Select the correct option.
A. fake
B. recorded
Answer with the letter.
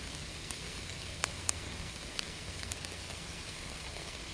A